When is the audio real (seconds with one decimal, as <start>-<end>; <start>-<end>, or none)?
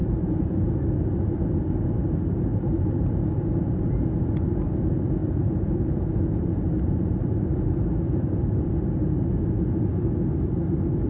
0.6-2.5; 3.1-5.2; 8.7-11.1